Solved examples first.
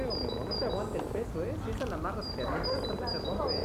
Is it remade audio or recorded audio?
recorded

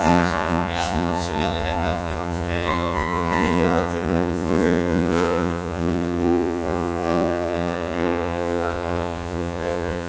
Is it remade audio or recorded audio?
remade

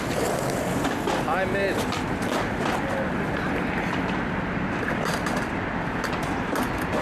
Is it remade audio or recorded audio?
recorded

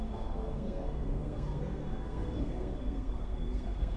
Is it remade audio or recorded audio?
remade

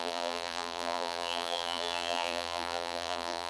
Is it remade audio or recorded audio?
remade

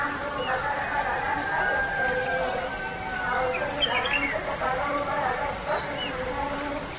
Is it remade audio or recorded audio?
recorded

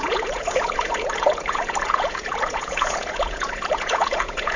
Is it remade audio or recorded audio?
remade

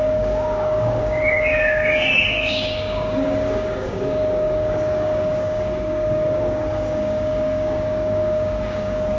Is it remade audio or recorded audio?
remade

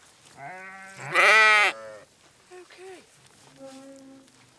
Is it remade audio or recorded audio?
recorded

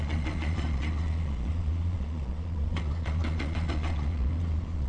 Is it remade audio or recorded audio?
remade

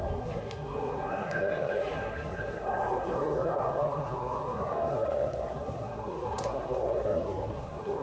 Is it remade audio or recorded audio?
remade